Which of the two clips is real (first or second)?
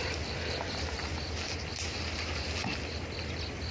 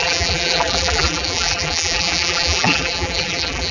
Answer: first